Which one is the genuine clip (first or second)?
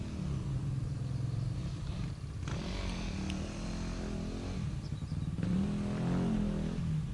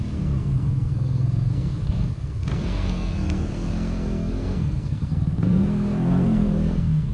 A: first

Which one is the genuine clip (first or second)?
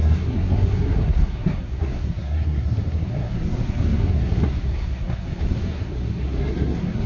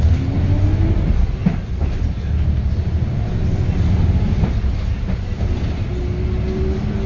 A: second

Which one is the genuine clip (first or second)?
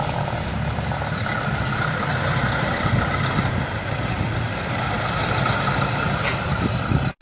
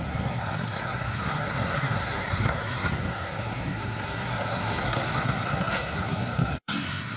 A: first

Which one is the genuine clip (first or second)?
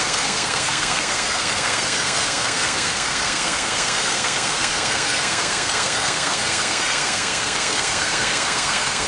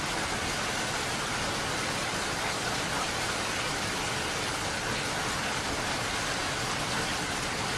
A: second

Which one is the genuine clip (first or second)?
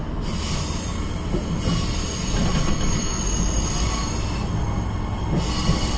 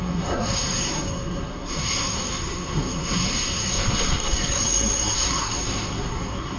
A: first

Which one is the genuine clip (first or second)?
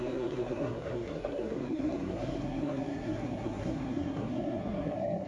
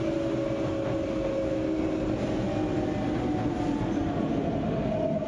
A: second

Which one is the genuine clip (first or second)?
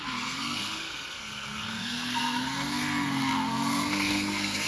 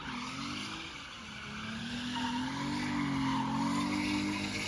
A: second